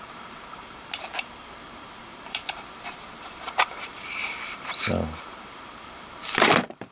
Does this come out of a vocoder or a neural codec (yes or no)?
yes